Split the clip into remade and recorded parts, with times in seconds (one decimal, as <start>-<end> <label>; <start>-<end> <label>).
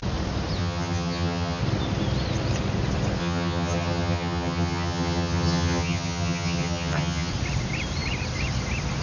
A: 0.0-0.6 recorded; 0.6-1.6 remade; 1.6-3.2 recorded; 3.2-7.3 remade; 7.3-9.0 recorded